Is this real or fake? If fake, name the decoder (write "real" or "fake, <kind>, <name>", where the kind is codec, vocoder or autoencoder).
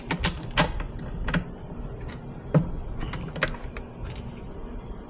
real